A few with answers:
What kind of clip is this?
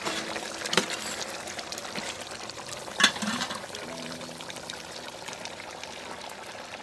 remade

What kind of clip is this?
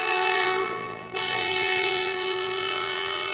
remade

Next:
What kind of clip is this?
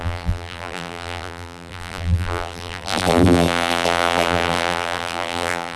remade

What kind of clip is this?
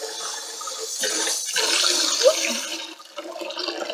remade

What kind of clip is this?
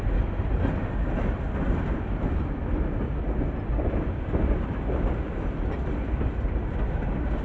recorded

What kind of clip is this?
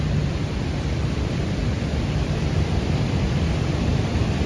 remade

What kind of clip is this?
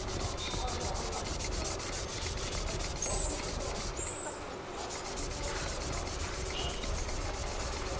recorded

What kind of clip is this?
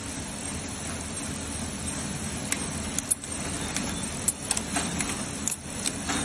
recorded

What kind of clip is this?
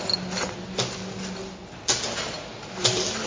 recorded